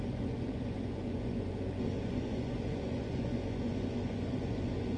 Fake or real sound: fake